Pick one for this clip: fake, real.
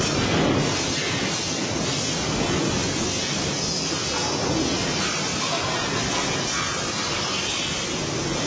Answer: real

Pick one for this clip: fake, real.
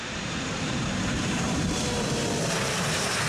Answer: fake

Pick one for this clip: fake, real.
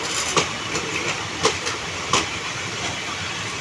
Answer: fake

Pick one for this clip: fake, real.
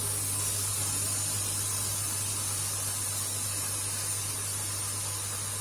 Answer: real